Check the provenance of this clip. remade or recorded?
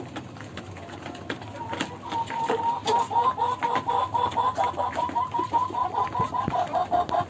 recorded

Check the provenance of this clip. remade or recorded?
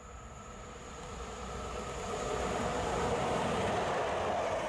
recorded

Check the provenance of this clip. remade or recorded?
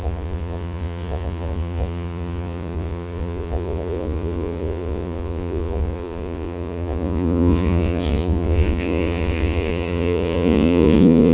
remade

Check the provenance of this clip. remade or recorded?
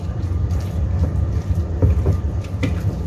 remade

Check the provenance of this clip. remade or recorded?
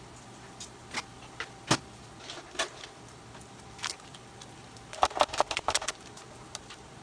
recorded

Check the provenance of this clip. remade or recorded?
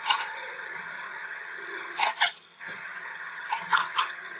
remade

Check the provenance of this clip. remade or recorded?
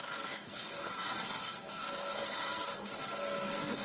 remade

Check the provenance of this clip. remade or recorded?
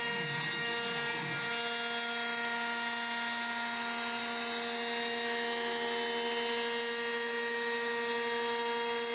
recorded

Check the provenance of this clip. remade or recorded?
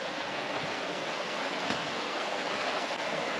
remade